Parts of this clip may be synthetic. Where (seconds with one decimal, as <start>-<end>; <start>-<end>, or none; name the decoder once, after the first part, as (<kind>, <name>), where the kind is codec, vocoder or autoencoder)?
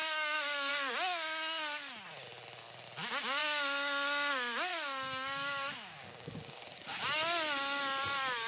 0.0-0.7 (codec, DAC); 4.7-7.0